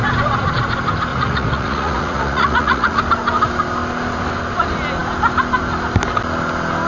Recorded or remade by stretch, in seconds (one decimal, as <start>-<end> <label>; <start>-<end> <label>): 0.0-1.1 recorded; 1.1-3.0 remade; 3.0-6.9 recorded

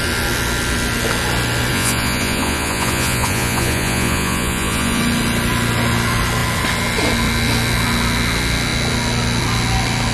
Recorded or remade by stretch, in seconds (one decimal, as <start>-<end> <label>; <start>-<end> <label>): 0.0-1.7 recorded; 1.7-5.0 remade; 5.0-10.1 recorded

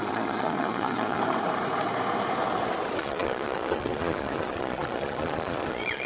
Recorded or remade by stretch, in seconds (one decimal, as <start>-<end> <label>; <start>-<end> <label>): 0.0-1.2 remade; 1.2-3.0 recorded; 3.0-6.1 remade

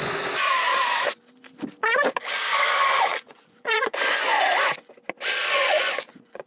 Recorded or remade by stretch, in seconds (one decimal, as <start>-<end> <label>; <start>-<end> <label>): 0.0-0.7 remade; 0.7-2.8 recorded; 2.8-4.3 remade; 4.3-5.5 recorded; 5.5-6.5 remade